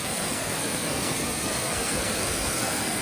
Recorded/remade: remade